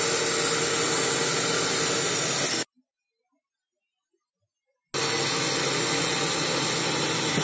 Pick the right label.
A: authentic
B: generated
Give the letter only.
A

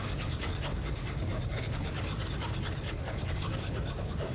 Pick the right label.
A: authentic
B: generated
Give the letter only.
B